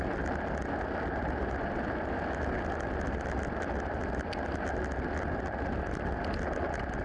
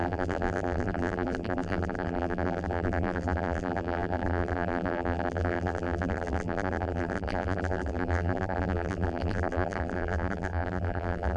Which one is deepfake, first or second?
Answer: second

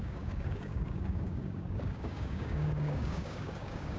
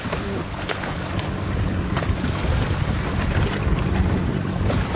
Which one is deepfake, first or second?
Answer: first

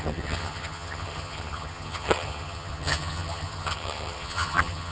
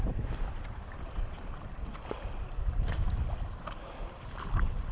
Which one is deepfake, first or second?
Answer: first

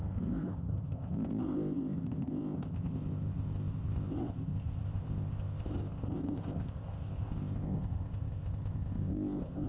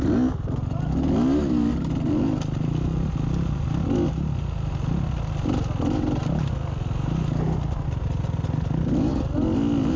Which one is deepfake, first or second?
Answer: first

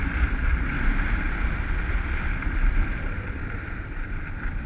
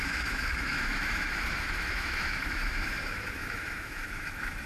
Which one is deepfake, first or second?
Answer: second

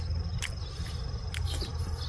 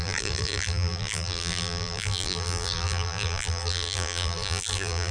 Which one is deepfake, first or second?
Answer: second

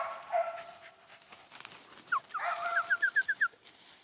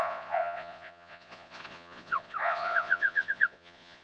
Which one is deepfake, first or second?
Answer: second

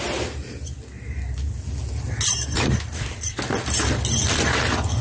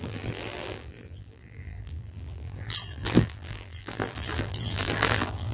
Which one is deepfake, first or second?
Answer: second